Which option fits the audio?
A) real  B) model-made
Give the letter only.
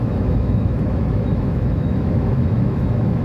B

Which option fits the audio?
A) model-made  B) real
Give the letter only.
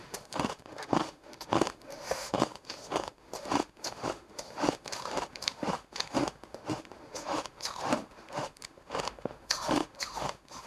A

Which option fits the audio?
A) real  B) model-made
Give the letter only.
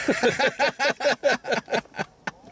A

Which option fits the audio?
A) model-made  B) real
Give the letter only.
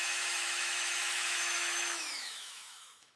A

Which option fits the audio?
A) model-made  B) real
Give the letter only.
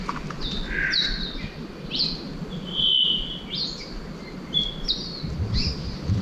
B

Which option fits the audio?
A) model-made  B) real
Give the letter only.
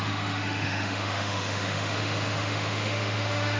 A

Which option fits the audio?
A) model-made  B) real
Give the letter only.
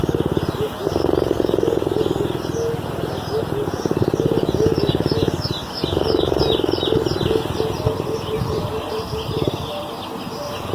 B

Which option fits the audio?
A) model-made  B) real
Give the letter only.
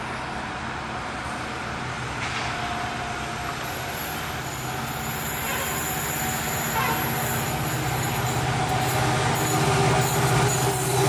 B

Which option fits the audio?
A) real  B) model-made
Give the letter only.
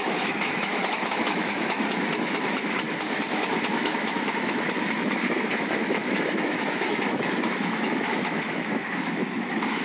B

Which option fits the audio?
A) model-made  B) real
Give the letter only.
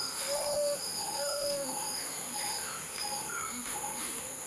A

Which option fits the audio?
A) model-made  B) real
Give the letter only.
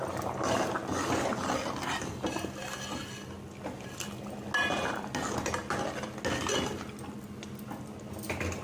B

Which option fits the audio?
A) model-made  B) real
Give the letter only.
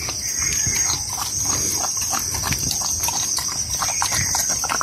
B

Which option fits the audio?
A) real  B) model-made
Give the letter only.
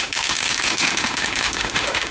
B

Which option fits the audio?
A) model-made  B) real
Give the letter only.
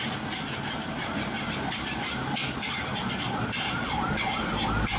B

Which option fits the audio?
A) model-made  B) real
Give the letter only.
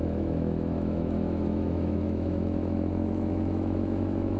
A